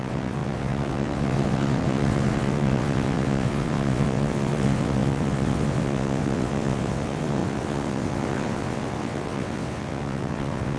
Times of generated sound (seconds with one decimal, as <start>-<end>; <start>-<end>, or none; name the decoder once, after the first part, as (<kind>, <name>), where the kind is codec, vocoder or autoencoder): 0.0-10.8 (vocoder, WaveNeXt)